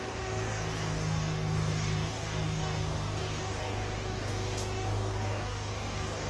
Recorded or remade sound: remade